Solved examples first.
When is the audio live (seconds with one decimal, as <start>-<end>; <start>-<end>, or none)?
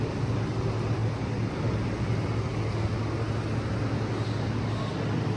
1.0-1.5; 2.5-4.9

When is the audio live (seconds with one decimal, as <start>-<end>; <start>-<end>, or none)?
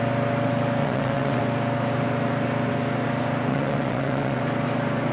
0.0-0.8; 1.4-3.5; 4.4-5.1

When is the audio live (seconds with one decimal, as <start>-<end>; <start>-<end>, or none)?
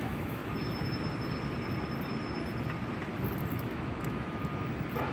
0.4-3.5; 4.4-5.1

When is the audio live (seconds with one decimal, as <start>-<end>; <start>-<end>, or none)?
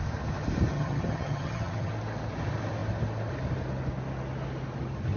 0.0-0.7; 1.9-5.2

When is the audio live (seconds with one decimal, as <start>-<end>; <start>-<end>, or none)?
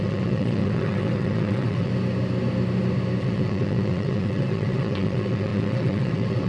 1.9-3.2